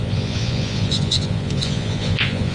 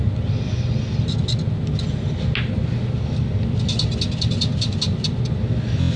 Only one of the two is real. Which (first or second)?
second